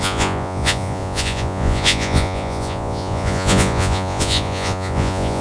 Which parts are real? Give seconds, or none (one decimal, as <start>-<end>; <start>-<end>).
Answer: none